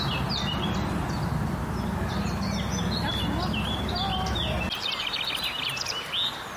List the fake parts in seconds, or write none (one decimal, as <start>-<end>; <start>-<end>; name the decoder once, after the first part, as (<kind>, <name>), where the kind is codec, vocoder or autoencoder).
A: none